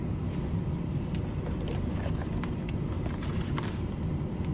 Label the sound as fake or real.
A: real